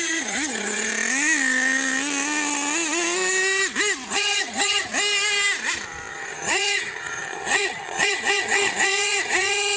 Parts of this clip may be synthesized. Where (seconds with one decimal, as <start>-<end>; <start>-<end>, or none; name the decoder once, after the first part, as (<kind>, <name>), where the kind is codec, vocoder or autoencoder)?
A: 0.0-0.9 (vocoder, HiFi-GAN); 4.1-4.9; 6.1-9.8